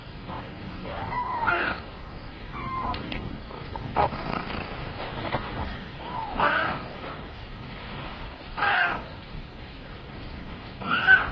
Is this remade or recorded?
remade